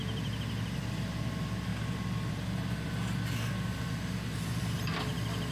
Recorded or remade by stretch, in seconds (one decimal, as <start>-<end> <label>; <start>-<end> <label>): 0.0-5.5 recorded